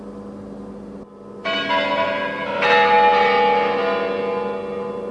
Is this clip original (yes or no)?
yes